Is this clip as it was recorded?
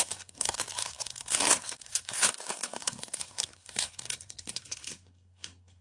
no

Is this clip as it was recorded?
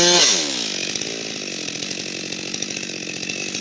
yes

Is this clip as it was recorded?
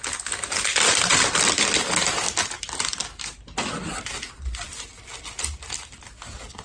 yes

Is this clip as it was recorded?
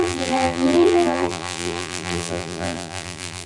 no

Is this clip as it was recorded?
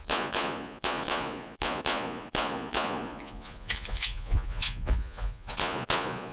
no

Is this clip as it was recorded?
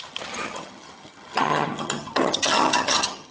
no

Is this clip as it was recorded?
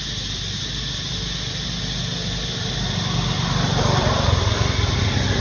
yes